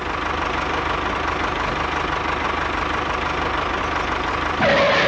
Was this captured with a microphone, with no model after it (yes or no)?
yes